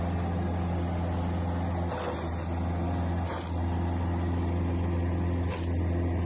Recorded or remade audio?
recorded